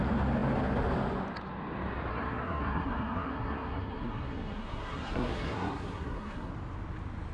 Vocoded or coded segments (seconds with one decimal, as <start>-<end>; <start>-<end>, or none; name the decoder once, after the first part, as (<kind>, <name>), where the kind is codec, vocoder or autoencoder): 2.1-6.5 (codec, SNAC)